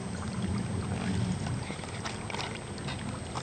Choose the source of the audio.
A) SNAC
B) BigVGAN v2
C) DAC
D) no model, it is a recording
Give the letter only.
D